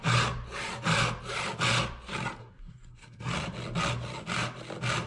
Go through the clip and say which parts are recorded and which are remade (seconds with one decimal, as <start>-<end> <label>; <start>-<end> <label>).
0.0-2.4 recorded; 2.4-3.3 remade; 3.3-5.1 recorded